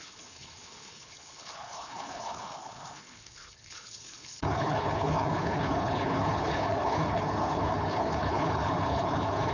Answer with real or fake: fake